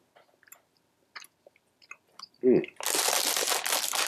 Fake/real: real